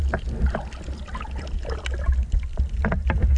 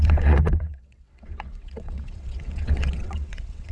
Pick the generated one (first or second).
second